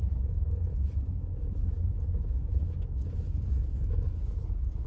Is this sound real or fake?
fake